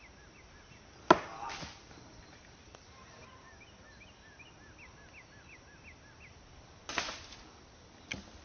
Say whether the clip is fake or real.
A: real